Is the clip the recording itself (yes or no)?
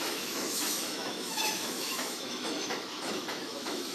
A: no